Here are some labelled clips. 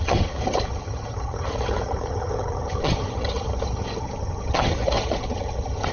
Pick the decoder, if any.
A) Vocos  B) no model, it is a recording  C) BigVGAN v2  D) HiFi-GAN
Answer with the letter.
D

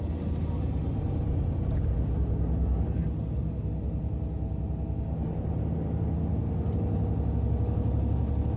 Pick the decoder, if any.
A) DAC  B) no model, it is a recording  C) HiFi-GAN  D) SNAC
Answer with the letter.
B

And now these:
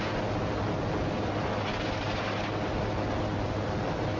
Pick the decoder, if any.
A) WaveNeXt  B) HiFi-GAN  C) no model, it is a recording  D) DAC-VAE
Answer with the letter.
C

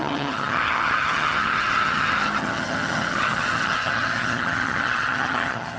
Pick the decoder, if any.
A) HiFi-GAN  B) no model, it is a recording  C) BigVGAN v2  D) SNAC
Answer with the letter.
A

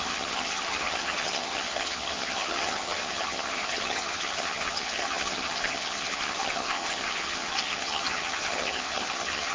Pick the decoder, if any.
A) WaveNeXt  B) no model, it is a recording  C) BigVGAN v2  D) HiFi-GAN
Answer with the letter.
D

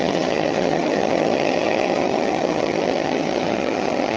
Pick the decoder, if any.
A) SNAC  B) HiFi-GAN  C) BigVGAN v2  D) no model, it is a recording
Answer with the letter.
B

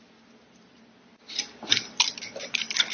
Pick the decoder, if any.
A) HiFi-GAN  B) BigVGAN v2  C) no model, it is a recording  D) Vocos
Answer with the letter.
C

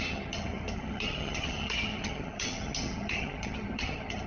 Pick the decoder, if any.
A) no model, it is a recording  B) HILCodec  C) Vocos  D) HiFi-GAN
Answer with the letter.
D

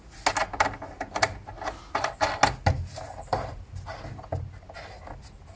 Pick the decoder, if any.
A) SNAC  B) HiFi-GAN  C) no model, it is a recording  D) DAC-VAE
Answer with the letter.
C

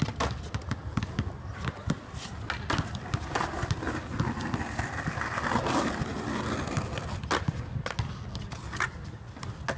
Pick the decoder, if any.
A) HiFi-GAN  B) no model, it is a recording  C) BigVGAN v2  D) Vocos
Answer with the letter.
B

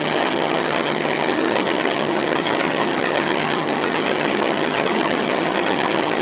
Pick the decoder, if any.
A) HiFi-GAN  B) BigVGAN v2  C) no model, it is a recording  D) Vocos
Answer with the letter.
A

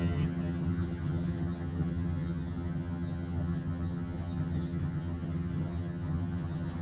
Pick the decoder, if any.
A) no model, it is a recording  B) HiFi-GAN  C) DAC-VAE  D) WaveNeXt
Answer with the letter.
B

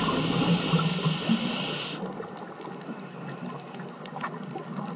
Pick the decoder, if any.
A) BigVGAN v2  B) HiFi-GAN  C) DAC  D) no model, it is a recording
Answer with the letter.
D